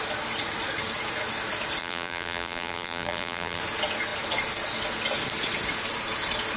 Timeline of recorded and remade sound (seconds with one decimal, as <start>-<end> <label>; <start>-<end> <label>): 0.0-1.8 recorded; 1.8-3.6 remade; 3.6-6.6 recorded